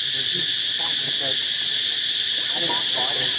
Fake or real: real